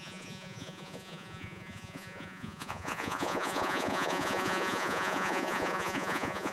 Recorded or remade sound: remade